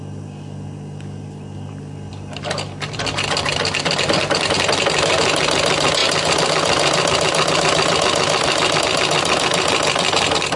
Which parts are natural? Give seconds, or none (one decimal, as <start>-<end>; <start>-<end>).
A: 0.0-10.6